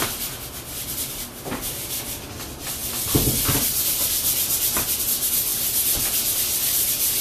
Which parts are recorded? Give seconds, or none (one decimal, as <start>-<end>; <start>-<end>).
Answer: 0.0-7.2